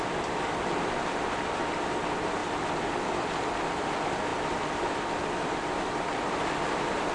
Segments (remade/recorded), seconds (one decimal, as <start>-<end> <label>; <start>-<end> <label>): 0.0-7.1 recorded

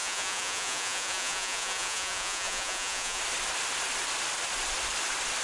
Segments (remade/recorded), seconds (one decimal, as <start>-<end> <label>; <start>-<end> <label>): 0.0-3.2 remade; 3.2-5.4 recorded

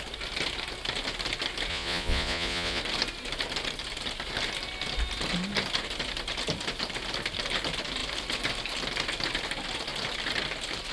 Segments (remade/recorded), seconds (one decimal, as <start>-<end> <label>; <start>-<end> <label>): 0.0-1.7 recorded; 1.7-2.8 remade; 2.8-10.9 recorded

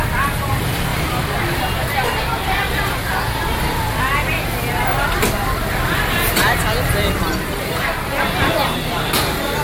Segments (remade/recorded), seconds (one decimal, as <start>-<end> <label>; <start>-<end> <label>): 0.0-9.6 recorded